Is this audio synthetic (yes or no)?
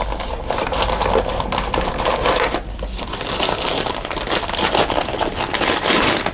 no